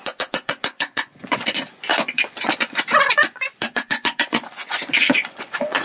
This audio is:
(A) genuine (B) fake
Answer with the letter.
B